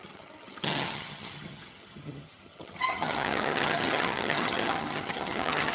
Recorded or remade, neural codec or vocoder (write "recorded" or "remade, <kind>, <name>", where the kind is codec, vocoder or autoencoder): remade, vocoder, HiFi-GAN